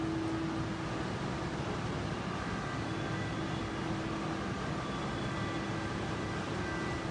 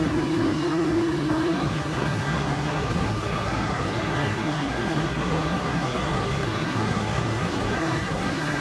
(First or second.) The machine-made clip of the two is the second